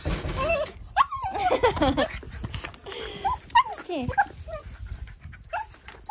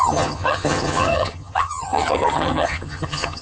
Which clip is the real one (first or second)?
first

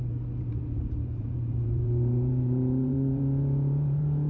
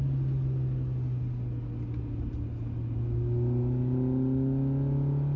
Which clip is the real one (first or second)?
second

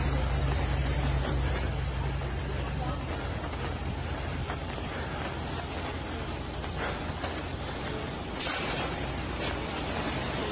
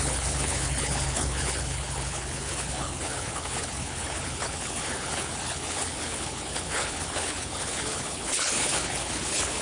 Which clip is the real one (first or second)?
first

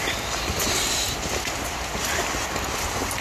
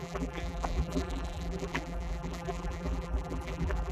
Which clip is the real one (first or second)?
first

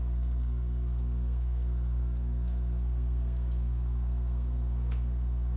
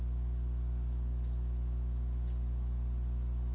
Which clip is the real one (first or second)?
second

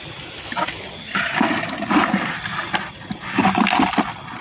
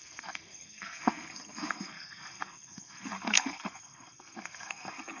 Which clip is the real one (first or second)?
first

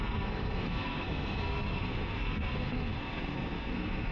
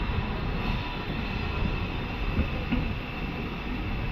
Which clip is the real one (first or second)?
second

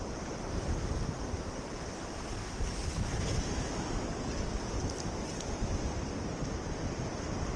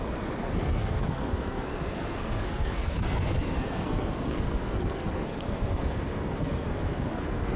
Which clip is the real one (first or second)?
first